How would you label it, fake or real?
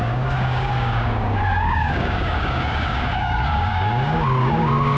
fake